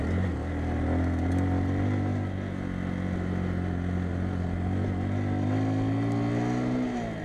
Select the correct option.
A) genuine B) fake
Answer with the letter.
A